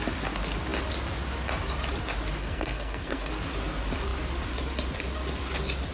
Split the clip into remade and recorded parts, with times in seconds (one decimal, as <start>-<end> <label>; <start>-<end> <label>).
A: 0.0-2.4 recorded; 2.4-3.3 remade; 3.3-5.9 recorded